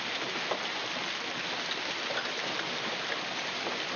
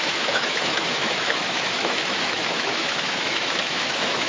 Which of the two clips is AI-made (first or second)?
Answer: second